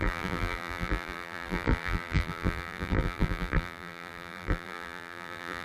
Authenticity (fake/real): fake